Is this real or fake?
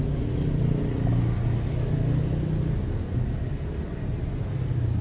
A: real